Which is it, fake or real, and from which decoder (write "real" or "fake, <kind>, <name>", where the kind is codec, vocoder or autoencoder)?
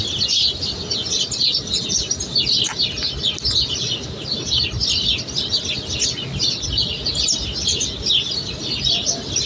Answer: real